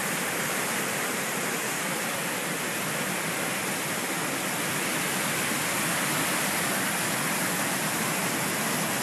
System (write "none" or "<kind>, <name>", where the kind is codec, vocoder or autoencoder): none